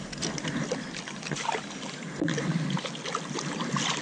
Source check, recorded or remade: recorded